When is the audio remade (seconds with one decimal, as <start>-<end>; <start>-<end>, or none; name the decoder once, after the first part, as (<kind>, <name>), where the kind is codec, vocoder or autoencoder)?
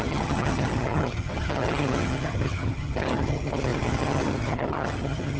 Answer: 0.0-5.4 (vocoder, HiFi-GAN)